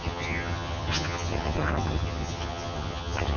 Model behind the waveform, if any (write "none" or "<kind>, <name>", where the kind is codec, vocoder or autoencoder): vocoder, HiFi-GAN